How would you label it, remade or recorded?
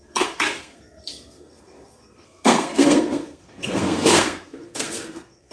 remade